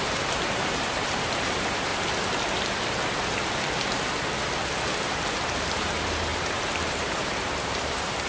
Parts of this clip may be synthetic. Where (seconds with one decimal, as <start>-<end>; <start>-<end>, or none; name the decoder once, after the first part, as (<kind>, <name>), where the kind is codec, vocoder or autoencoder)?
0.0-1.9 (vocoder, BigVGAN v2); 5.7-8.3